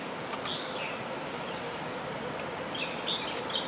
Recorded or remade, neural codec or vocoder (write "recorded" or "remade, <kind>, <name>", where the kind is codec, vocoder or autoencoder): recorded